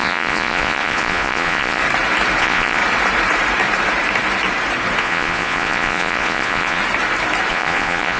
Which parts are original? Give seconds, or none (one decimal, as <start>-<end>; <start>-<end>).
1.8-2.4; 2.8-5.0; 6.8-7.5